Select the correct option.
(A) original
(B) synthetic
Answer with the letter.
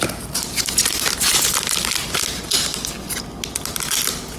A